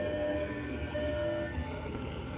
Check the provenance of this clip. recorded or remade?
remade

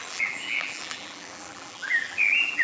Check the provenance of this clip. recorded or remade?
remade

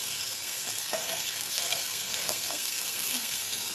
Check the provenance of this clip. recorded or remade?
remade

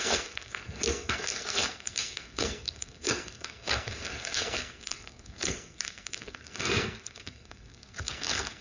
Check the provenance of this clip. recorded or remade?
remade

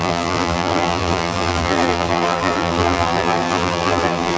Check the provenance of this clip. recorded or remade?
remade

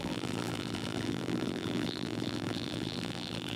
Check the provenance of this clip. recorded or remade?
remade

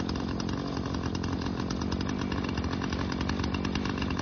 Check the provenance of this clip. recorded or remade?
recorded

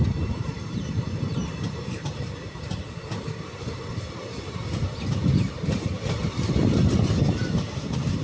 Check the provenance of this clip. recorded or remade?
remade